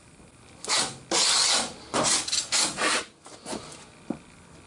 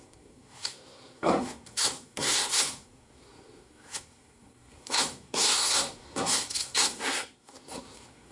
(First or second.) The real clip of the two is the first